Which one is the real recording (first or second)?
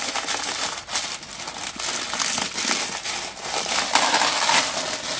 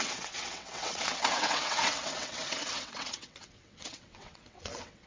first